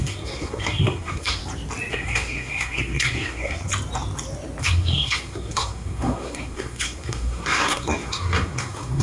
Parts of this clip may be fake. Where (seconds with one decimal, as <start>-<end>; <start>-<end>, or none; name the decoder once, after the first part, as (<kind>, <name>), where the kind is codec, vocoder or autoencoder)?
0.0-1.4 (codec, SNAC); 1.9-3.7; 4.6-9.0